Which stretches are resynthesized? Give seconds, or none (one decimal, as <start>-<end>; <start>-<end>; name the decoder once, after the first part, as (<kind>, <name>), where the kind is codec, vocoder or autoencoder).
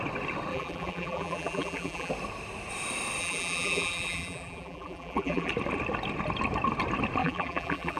0.5-2.1 (vocoder, BigVGAN v2); 3.2-5.5; 7.2-8.0